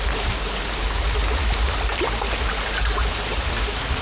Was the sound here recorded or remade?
recorded